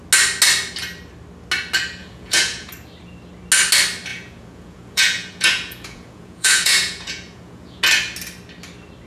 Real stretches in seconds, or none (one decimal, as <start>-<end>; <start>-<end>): 0.0-2.0; 2.7-4.1; 7.8-9.1